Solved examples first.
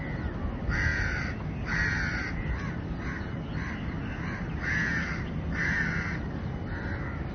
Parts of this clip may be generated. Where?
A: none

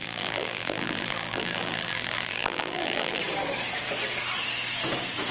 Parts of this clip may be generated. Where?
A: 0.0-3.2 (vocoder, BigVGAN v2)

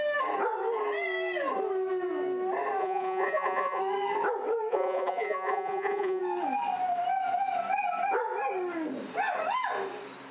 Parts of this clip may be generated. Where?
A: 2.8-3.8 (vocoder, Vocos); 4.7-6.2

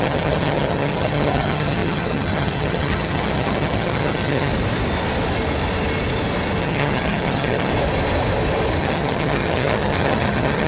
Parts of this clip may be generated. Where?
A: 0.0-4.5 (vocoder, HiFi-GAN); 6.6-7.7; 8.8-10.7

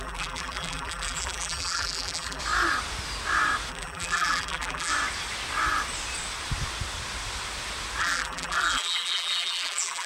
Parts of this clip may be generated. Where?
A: 0.0-2.4 (vocoder, BigVGAN v2); 3.7-4.9; 8.0-10.1

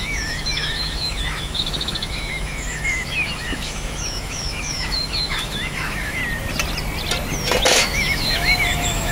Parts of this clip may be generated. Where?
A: 0.0-6.2 (autoencoder, DAC-VAE); 7.7-9.1